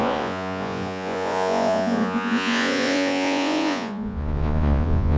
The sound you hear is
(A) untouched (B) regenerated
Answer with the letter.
B